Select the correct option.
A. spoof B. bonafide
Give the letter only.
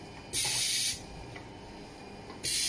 B